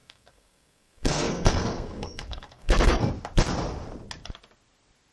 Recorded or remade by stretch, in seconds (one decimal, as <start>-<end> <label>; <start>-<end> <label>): 0.0-3.1 remade; 3.1-5.1 recorded